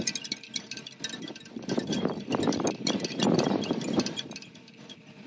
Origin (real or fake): real